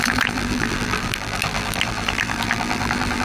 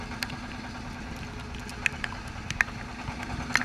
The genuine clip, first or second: second